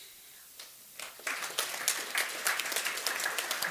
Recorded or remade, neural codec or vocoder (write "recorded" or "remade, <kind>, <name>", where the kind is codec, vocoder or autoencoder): recorded